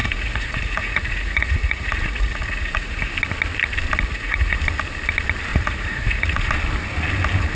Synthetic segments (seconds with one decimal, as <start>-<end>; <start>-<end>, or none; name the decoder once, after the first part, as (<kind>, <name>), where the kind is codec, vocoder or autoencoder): 0.0-3.1 (vocoder, Vocos); 4.1-4.6; 5.5-6.5